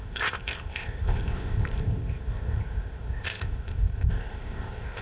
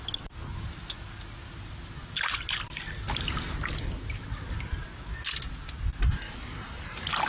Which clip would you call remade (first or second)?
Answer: first